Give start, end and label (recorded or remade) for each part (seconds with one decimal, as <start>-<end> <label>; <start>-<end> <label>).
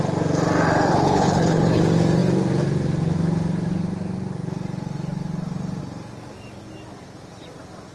0.0-0.9 recorded; 0.9-1.8 remade; 1.8-7.9 recorded